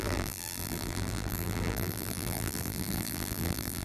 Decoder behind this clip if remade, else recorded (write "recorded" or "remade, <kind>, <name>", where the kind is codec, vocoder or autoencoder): remade, vocoder, BigVGAN v2